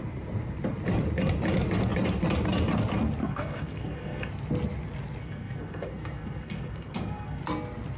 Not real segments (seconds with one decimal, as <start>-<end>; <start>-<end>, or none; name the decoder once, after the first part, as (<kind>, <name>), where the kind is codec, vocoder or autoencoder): 3.2-4.3 (codec, SNAC); 5.2-7.4